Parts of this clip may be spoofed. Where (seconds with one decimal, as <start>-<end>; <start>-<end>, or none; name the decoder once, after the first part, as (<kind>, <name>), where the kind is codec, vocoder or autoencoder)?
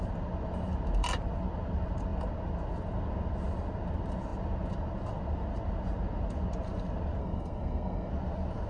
7.2-8.1 (codec, SNAC)